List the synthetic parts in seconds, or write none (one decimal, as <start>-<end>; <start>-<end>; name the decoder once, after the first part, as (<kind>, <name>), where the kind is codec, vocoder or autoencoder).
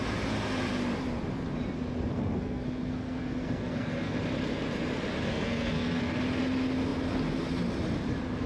2.1-4.2 (codec, SNAC); 5.3-6.2